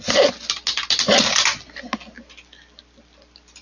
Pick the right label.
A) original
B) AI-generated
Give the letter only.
A